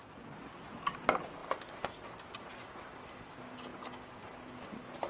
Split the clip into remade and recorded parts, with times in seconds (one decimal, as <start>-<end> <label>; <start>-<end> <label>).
0.0-5.1 recorded